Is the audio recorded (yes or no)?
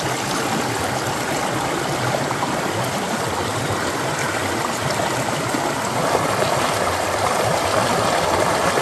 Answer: yes